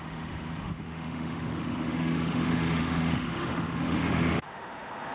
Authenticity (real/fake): fake